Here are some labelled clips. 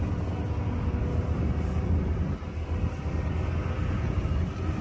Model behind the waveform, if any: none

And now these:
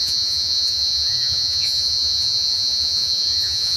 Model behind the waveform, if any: vocoder, Vocos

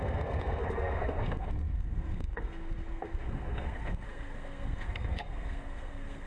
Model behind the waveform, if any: codec, SNAC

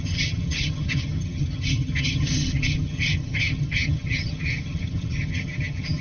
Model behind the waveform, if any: vocoder, HiFi-GAN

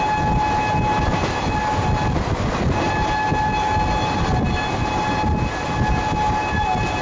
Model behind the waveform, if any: none